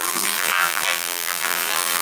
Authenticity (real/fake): fake